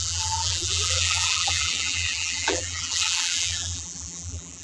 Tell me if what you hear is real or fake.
fake